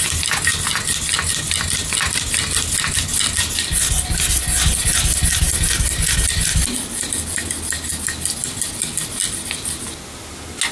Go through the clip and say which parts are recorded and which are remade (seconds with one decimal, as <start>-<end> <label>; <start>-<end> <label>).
0.0-10.7 recorded